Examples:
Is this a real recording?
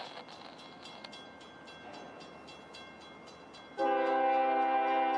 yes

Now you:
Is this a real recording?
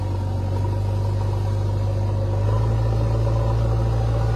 yes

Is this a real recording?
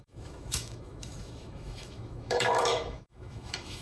no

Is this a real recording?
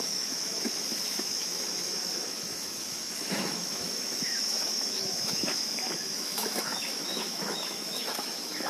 no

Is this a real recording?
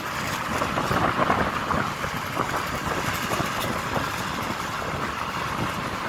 yes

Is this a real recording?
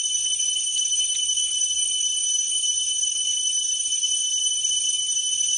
yes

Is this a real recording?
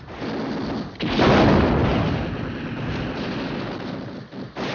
yes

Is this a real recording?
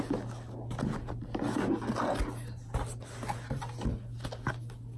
yes